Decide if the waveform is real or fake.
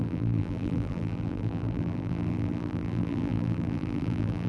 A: fake